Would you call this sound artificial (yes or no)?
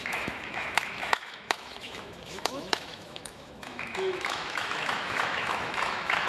yes